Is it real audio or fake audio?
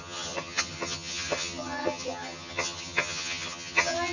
fake